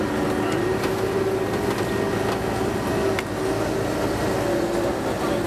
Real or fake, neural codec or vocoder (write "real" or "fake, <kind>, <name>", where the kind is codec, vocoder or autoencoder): real